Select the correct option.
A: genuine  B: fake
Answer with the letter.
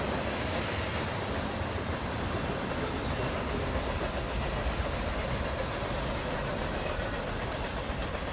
A